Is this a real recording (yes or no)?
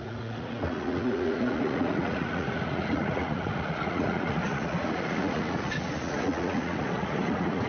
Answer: no